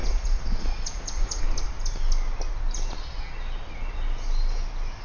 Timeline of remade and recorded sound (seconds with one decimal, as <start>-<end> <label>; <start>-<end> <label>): 0.0-1.4 remade; 1.4-5.0 recorded